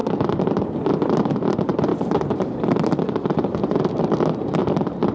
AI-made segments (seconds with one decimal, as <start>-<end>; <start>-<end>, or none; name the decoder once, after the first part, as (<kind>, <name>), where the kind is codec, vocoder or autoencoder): 1.9-3.4 (vocoder, BigVGAN v2)